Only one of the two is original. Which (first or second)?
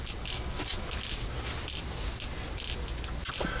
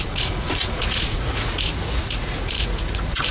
first